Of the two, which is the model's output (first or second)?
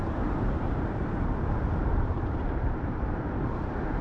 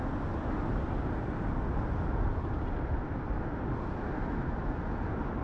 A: first